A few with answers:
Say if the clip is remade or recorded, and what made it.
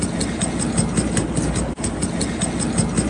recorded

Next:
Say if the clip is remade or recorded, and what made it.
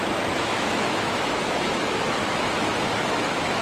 remade, autoencoder, DAC-VAE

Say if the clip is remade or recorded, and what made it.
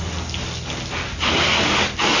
recorded